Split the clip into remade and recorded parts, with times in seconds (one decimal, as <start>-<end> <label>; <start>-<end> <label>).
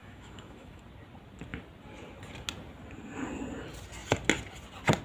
0.0-0.8 remade; 0.8-5.0 recorded